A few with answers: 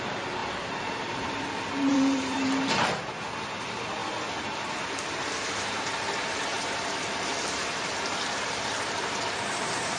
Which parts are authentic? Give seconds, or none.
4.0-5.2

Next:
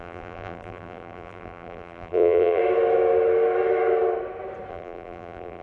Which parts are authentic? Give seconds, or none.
2.6-4.7

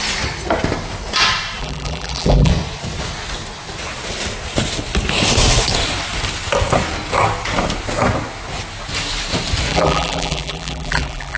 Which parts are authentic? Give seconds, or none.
0.0-1.6; 2.5-9.7